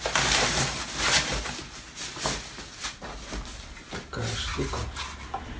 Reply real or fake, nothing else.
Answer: real